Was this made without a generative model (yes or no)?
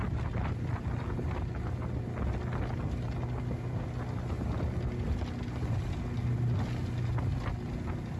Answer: yes